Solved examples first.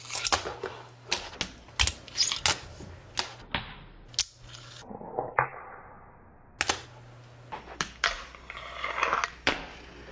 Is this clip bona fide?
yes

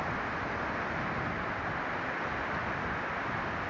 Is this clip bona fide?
yes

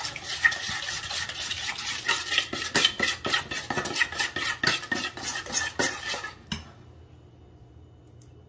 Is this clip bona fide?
yes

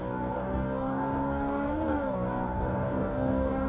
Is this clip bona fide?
no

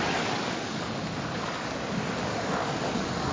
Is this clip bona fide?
no